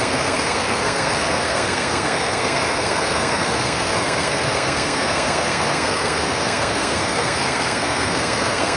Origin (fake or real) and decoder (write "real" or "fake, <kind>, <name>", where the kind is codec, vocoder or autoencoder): fake, codec, SNAC